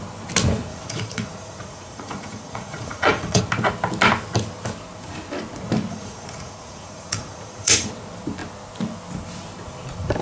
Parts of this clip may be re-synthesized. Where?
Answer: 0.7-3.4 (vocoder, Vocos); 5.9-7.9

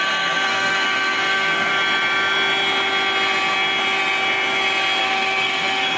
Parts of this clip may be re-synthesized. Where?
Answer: 0.0-1.7 (codec, SNAC); 5.0-6.0

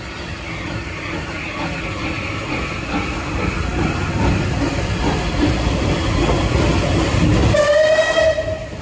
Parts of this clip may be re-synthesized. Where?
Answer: none

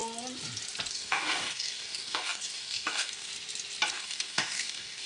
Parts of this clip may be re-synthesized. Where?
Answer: 0.9-3.3 (codec, DAC); 3.9-5.1

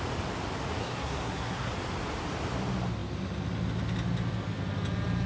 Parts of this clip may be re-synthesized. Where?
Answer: 0.8-1.7 (codec, SNAC)